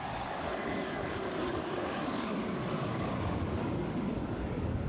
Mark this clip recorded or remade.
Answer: remade